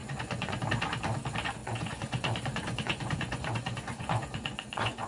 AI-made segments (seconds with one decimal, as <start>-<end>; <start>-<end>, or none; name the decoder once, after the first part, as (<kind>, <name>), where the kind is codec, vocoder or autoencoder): 0.0-0.6 (vocoder, Vocos); 1.6-5.1